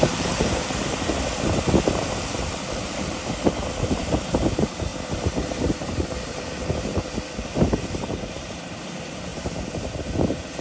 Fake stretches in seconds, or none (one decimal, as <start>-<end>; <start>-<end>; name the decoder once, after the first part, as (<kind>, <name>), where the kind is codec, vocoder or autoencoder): 0.0-1.1 (vocoder, BigVGAN v2); 4.0-4.9; 5.6-6.9; 7.8-10.6